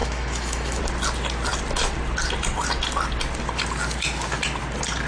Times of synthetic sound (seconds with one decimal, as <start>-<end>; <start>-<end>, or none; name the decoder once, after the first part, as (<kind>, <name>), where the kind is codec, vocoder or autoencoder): 0.0-0.8 (autoencoder, DAC-VAE)